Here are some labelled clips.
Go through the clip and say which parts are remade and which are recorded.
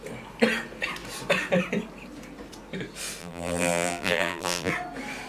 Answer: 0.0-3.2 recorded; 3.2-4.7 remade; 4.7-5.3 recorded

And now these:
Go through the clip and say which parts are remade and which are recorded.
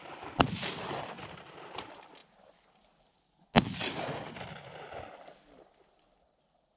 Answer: 0.0-2.2 remade; 2.2-5.1 recorded; 5.1-6.8 remade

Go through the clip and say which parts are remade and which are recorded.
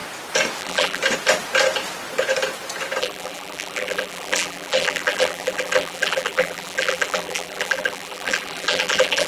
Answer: 0.0-0.6 recorded; 0.6-1.0 remade; 1.0-3.0 recorded; 3.0-9.3 remade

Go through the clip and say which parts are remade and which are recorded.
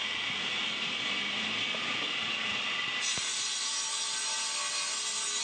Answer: 0.0-5.4 recorded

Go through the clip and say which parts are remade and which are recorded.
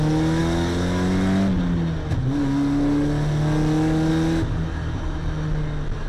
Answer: 0.0-6.1 recorded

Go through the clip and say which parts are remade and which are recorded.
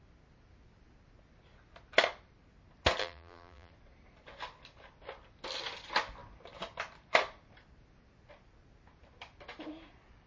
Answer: 0.0-3.0 recorded; 3.0-3.7 remade; 3.7-10.3 recorded